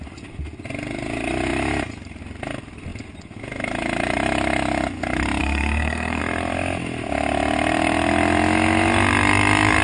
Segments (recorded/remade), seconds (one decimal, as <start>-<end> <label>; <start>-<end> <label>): 0.0-5.4 recorded; 5.4-6.2 remade; 6.2-9.8 recorded